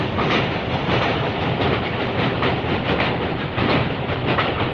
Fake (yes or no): yes